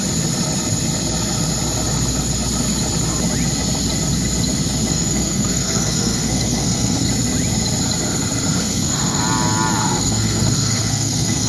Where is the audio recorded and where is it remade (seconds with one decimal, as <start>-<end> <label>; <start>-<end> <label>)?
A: 0.0-4.9 recorded; 4.9-7.1 remade; 7.1-8.6 recorded; 8.6-9.2 remade; 9.2-9.8 recorded; 9.8-11.5 remade

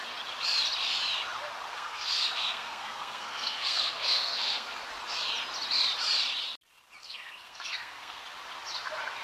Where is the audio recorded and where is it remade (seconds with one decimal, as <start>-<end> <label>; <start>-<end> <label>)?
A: 0.0-1.7 recorded; 1.7-4.8 remade; 4.8-7.0 recorded; 7.0-8.2 remade; 8.2-9.2 recorded